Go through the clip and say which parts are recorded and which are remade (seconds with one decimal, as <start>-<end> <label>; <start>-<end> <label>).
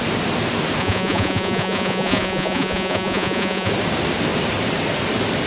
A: 0.0-0.8 recorded; 0.8-3.7 remade; 3.7-5.5 recorded